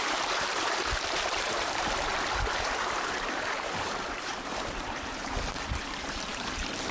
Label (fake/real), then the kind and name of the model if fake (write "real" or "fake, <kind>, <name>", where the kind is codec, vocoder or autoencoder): fake, vocoder, BigVGAN v2